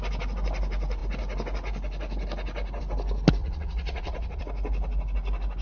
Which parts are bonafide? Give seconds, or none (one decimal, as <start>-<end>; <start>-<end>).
0.0-3.4; 4.4-5.6